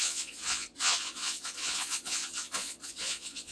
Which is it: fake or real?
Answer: fake